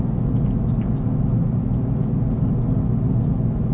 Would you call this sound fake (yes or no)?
no